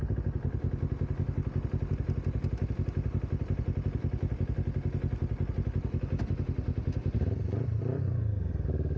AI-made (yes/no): no